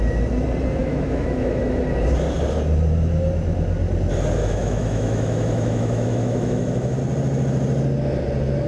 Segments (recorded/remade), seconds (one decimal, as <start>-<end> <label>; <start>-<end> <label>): 0.0-0.8 recorded; 0.8-1.8 remade; 1.8-4.4 recorded; 4.4-7.0 remade; 7.0-8.7 recorded